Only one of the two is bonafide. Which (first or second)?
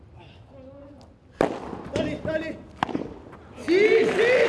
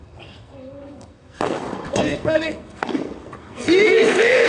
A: first